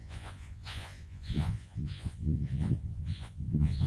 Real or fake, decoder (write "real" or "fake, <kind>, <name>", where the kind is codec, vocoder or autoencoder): fake, vocoder, Vocos